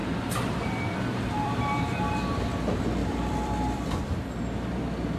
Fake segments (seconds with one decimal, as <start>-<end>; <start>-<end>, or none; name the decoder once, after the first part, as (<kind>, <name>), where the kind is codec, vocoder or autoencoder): 0.0-2.5 (vocoder, BigVGAN v2); 3.0-4.4